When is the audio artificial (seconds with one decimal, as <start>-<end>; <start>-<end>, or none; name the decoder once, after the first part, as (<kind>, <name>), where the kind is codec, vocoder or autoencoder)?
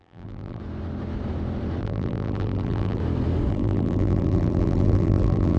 0.0-0.6 (vocoder, BigVGAN v2); 1.8-3.0; 3.5-5.6